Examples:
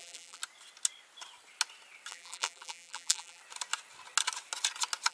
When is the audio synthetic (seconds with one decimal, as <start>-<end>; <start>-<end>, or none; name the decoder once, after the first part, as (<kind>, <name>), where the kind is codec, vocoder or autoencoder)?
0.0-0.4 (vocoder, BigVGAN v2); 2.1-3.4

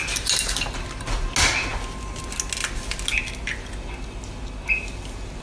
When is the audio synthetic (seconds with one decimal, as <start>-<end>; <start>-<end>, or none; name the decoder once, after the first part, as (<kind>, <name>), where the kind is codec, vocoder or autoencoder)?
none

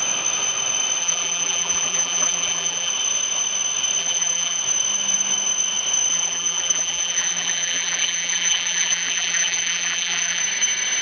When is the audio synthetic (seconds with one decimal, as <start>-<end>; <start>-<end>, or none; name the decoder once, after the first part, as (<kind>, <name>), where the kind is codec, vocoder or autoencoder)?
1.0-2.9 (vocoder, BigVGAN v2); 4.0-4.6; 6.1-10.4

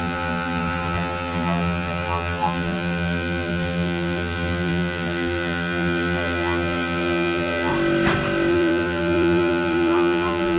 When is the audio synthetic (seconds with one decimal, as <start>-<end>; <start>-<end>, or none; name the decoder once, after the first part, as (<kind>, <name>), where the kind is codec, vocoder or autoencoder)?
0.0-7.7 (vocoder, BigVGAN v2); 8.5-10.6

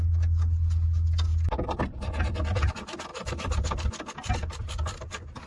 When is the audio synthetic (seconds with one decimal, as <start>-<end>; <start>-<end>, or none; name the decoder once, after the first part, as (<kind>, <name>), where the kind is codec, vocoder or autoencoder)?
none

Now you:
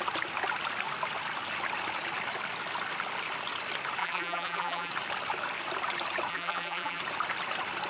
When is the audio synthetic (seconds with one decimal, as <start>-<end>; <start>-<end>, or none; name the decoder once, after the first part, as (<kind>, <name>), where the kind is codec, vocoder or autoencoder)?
4.0-4.9 (vocoder, BigVGAN v2); 6.3-7.0

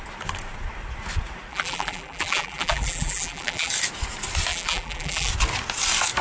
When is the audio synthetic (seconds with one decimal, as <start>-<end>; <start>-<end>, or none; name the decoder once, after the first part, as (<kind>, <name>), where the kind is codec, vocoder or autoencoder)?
1.5-3.7 (vocoder, BigVGAN v2); 4.5-5.3

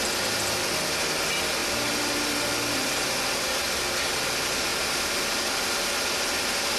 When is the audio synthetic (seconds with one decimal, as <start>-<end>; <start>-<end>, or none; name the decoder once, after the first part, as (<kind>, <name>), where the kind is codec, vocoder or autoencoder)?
none